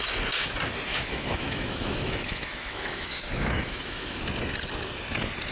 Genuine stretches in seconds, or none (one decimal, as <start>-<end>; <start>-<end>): 0.0-0.9; 4.2-5.5